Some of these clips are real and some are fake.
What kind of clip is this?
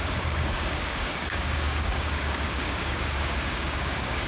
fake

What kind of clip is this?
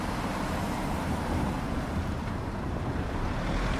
fake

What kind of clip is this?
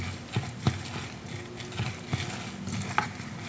real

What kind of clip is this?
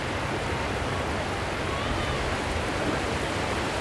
real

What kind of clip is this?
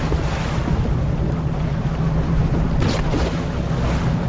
real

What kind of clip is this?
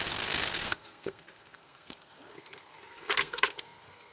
fake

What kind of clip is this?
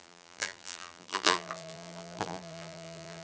fake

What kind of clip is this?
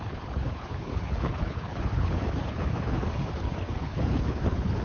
fake